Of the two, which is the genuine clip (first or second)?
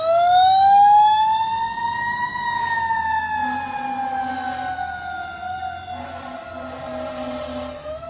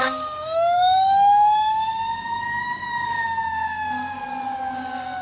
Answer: first